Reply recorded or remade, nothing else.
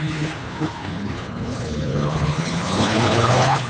remade